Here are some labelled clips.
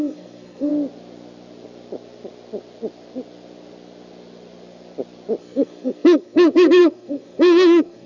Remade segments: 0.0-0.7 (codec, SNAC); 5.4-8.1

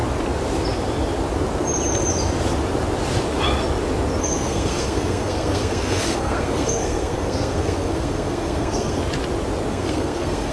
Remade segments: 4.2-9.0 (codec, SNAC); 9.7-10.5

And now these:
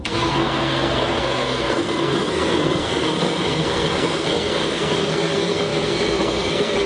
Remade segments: 0.0-6.9 (codec, SNAC)

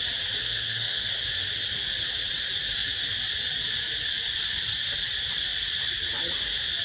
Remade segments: 0.4-1.1 (codec, SNAC)

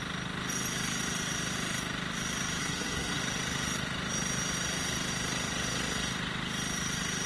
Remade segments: 2.6-3.2 (codec, SNAC)

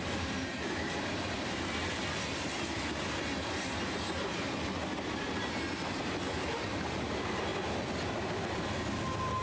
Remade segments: none